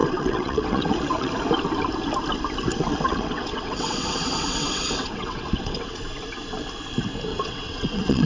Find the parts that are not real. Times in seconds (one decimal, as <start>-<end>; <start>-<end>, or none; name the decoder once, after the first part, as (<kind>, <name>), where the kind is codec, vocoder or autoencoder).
0.0-1.3 (vocoder, WaveNeXt); 2.7-6.0; 7.3-8.3